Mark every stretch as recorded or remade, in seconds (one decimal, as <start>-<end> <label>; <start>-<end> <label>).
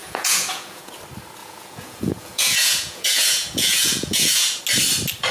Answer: 0.0-0.9 remade; 0.9-1.4 recorded; 1.4-4.6 remade; 4.6-5.3 recorded